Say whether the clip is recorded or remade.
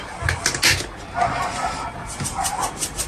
recorded